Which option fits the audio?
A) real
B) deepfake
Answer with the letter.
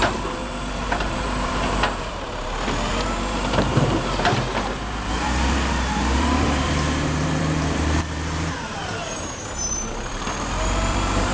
B